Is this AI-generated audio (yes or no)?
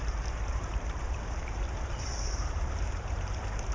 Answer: yes